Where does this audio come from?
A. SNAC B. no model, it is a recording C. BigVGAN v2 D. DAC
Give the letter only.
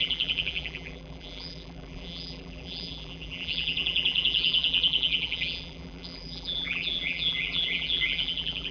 C